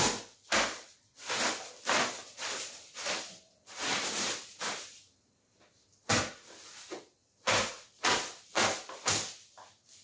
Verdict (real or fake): real